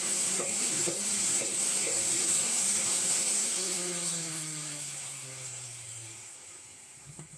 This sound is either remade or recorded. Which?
remade